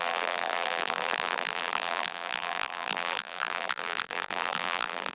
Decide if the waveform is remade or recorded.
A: remade